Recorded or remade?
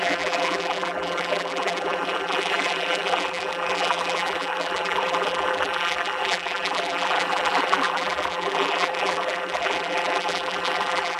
remade